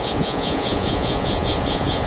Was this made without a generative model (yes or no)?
no